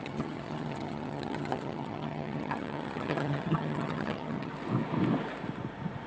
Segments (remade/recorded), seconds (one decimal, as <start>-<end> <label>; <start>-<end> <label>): 0.0-4.5 remade; 4.5-6.1 recorded